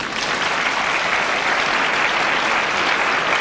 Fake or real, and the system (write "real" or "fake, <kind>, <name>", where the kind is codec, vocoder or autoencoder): real